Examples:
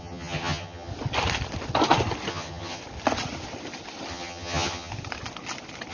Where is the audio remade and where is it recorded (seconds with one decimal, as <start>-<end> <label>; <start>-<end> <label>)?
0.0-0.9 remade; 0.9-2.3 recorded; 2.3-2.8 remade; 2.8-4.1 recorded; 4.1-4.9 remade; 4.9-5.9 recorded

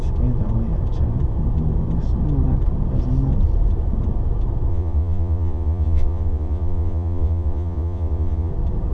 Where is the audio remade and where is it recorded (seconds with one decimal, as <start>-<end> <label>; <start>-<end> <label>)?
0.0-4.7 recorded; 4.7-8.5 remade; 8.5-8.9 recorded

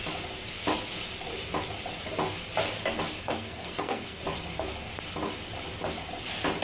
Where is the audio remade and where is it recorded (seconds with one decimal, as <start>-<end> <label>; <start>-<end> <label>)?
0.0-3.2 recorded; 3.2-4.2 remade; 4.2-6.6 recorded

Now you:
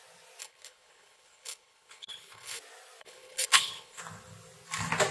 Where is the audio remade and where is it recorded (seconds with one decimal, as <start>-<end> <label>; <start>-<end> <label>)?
0.0-0.4 recorded; 0.4-2.6 remade; 2.6-3.0 recorded; 3.0-4.0 remade; 4.0-5.1 recorded